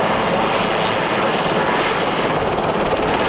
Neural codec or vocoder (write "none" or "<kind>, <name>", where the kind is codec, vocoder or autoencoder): none